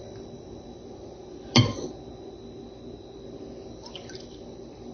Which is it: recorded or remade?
remade